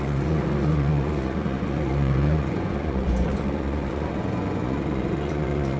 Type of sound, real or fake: fake